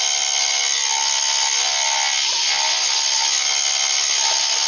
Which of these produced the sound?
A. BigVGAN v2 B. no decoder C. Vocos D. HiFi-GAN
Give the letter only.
B